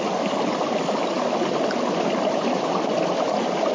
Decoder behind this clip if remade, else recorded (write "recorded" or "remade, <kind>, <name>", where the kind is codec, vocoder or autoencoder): recorded